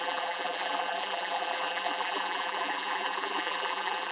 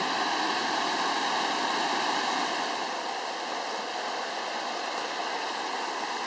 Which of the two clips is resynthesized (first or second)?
first